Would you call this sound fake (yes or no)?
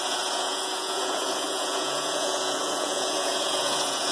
yes